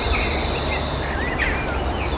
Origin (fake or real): real